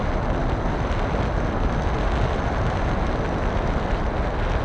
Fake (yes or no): no